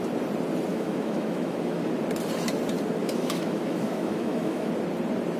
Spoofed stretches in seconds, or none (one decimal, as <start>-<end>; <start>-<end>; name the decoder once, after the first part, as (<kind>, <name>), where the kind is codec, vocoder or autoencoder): 0.7-1.9 (autoencoder, DAC-VAE); 3.0-4.7